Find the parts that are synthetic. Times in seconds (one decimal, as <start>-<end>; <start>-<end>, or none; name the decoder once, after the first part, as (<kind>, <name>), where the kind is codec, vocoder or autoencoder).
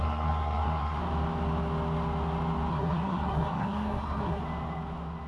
0.0-1.0 (codec, SNAC); 2.7-4.4